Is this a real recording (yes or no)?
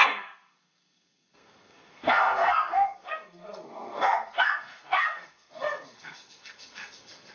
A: no